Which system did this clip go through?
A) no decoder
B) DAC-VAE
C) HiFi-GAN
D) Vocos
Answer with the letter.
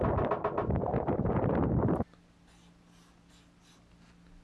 A